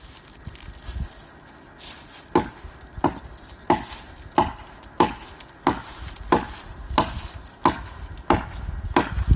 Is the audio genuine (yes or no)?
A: yes